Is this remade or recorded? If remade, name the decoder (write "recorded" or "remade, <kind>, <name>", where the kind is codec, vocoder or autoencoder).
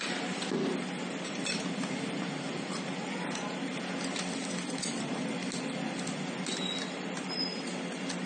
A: recorded